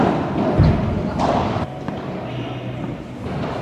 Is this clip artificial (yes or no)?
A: no